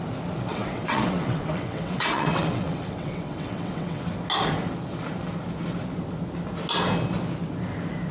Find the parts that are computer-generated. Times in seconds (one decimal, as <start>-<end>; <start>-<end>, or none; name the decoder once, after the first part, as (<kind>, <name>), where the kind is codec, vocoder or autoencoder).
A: 0.5-4.1 (vocoder, WaveNeXt)